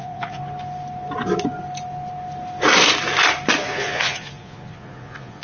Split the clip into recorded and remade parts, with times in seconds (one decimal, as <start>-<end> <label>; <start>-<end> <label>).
0.0-0.4 remade; 0.4-3.6 recorded; 3.6-5.4 remade